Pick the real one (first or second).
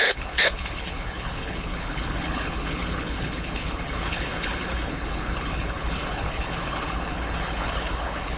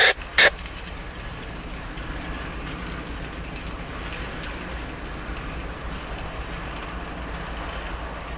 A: second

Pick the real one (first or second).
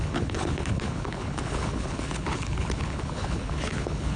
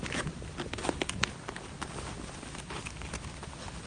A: second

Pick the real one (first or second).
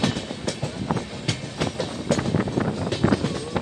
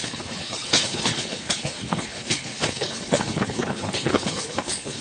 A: first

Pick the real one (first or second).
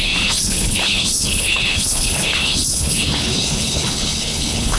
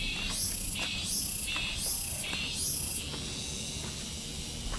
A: second